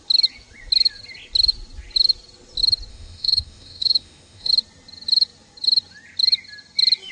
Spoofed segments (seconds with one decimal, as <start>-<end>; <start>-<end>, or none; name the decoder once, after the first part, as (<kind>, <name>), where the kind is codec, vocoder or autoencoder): 2.9-4.5 (autoencoder, DAC-VAE)